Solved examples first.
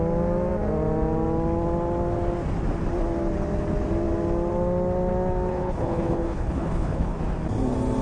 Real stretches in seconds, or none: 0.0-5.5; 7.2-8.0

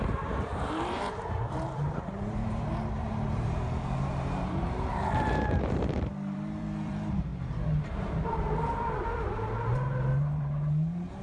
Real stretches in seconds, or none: 7.3-7.9

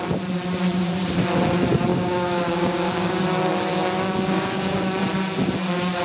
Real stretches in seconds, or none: 0.0-1.9; 3.2-3.7; 5.0-6.0

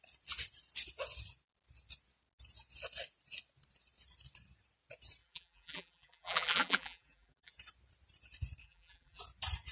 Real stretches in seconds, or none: 0.0-5.2; 7.5-8.6; 9.2-9.7

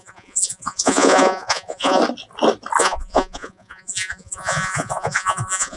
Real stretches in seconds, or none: 2.0-2.8